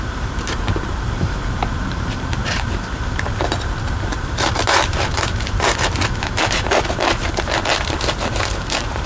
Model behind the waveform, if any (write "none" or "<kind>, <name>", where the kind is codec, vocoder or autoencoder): vocoder, BigVGAN v2